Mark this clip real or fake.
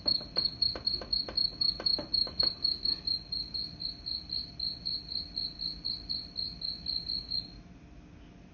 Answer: real